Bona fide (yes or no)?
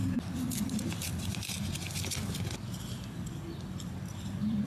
no